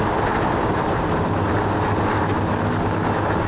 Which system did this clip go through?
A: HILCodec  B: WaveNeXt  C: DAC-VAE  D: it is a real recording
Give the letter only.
D